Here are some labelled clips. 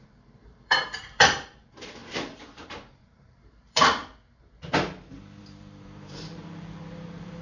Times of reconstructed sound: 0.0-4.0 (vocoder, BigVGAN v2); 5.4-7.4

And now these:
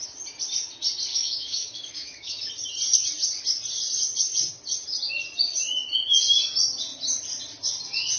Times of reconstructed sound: 1.1-2.5 (autoencoder, DAC-VAE)

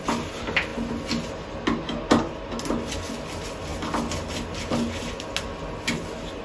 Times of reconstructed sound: none

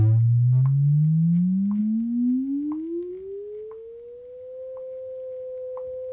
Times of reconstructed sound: 1.8-3.1 (autoencoder, DAC-VAE)